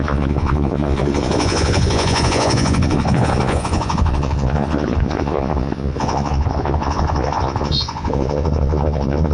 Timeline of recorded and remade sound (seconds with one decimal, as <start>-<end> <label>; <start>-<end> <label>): 0.0-9.3 remade